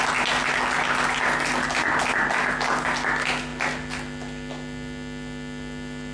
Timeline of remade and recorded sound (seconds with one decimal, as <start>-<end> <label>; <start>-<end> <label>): 0.0-6.1 recorded